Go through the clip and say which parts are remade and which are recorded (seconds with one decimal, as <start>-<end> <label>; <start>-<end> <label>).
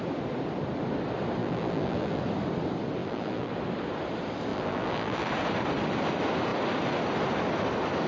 0.0-1.4 recorded; 1.4-2.2 remade; 2.2-3.0 recorded; 3.0-3.5 remade; 3.5-4.5 recorded; 4.5-5.3 remade; 5.3-8.1 recorded